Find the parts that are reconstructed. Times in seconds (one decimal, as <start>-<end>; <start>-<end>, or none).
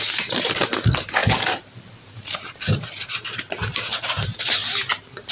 0.0-4.6